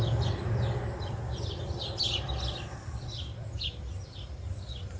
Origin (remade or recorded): remade